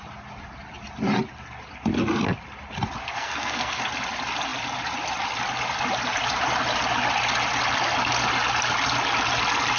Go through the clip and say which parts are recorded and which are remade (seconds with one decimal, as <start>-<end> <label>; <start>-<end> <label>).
0.0-3.0 recorded; 3.0-3.8 remade; 3.8-9.8 recorded